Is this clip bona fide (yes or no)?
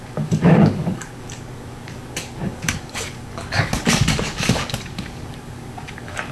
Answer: no